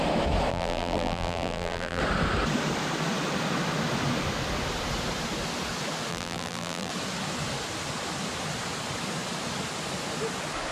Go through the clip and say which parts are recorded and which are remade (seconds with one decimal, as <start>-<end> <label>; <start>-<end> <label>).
0.0-0.5 recorded; 0.5-2.0 remade; 2.0-6.1 recorded; 6.1-6.9 remade; 6.9-10.7 recorded